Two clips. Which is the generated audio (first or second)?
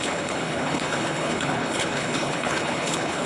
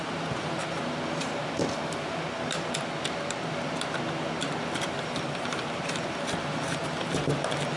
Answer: first